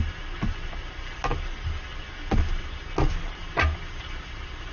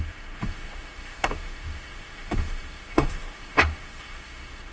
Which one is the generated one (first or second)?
second